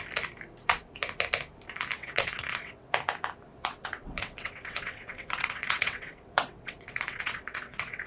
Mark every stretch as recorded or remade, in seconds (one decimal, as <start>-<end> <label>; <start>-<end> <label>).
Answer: 0.0-2.0 recorded; 2.0-2.9 remade; 2.9-3.5 recorded; 3.5-8.1 remade